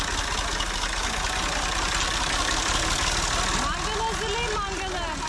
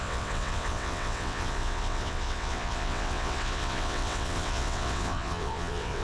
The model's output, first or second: second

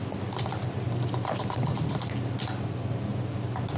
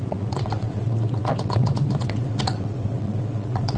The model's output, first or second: second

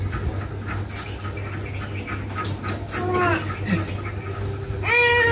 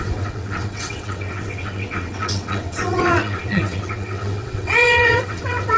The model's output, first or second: second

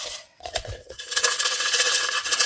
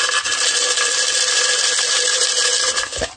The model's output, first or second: first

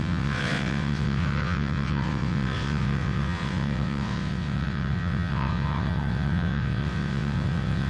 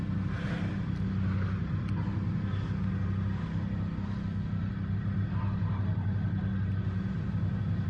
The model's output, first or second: first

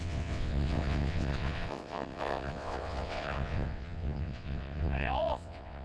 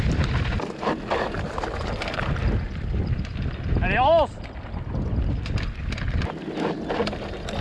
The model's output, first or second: first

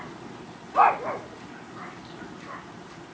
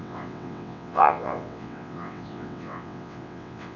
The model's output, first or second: second